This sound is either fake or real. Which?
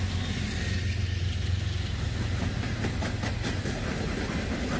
real